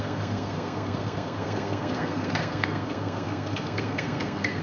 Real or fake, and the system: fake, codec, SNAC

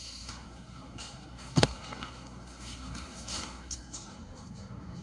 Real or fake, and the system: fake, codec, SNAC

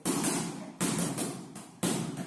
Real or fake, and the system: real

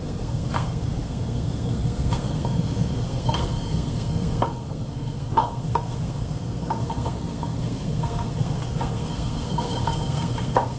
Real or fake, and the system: fake, codec, SNAC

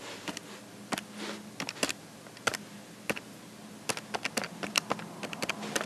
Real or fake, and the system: real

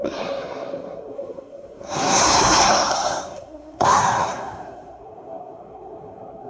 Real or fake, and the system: fake, codec, SNAC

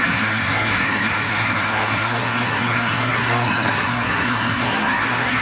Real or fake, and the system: fake, codec, SNAC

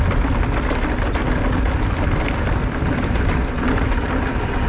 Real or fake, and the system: real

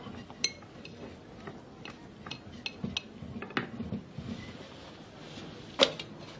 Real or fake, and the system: real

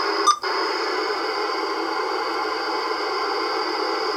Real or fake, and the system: real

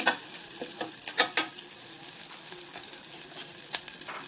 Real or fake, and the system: real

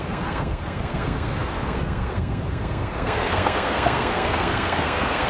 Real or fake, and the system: fake, codec, SNAC